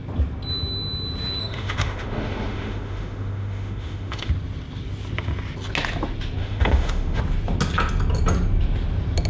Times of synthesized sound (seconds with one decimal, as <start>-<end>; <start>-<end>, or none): 1.4-4.3; 6.4-7.2